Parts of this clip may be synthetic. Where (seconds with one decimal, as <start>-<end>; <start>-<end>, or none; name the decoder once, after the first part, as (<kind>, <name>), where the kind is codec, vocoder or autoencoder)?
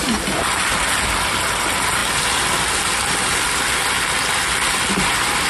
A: none